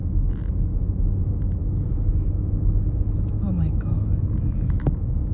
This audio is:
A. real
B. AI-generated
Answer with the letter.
B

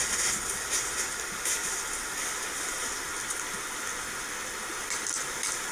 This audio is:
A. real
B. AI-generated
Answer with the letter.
A